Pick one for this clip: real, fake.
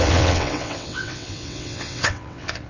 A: fake